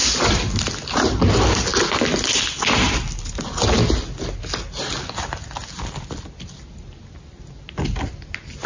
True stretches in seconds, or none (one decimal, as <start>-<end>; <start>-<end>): 0.0-8.7